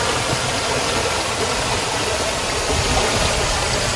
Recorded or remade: recorded